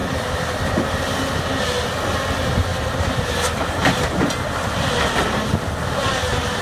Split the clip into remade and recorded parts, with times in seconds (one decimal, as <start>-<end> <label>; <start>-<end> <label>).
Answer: 0.0-2.7 recorded; 2.7-6.6 remade